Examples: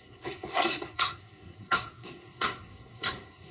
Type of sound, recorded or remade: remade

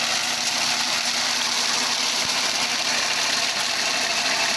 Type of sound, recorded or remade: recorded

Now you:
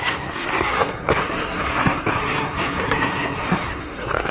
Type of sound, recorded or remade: remade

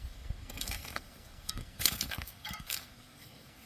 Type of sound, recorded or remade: remade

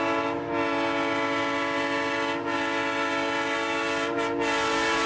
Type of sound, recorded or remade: recorded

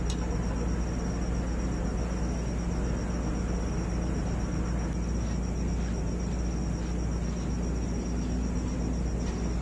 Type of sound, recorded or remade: recorded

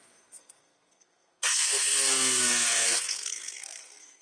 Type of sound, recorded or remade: remade